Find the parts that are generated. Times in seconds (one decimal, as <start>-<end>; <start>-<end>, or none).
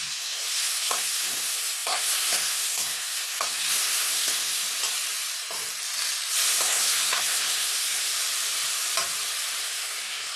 0.0-4.6; 6.6-8.1; 9.6-10.4